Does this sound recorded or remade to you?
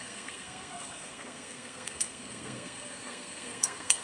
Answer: remade